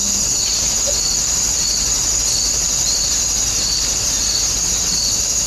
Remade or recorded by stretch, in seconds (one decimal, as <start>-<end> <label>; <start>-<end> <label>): 0.0-5.5 recorded